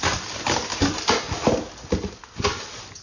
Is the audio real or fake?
real